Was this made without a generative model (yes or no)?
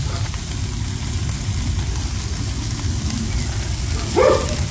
yes